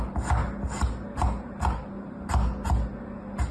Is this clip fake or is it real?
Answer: real